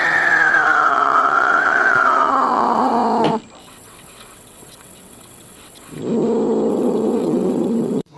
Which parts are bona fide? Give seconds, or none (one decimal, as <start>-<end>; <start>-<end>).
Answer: 3.0-3.6; 6.0-6.7